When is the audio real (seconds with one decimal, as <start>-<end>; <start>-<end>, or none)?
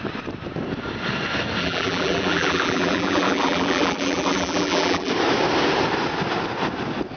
0.0-1.6; 5.1-7.2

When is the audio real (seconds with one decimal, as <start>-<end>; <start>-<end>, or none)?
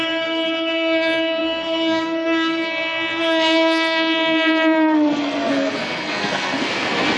none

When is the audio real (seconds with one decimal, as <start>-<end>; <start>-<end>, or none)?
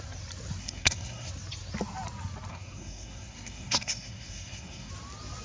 0.0-0.6; 1.3-2.5; 4.9-5.4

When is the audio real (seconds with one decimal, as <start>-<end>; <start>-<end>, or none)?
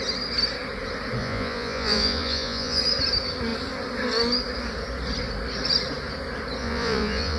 0.0-1.2; 2.8-6.6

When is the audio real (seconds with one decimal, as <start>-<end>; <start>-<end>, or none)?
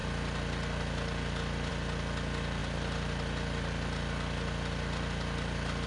0.0-5.9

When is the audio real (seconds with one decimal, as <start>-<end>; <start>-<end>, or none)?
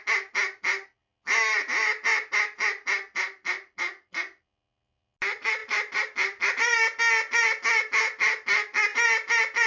0.0-5.6; 7.0-9.7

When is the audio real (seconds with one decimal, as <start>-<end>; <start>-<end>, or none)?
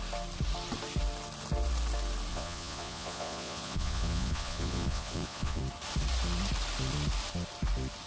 0.0-2.3; 5.6-8.1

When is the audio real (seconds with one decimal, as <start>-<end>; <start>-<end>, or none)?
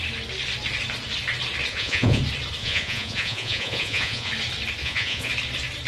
0.0-1.7; 2.2-2.6; 4.3-4.8; 5.3-5.9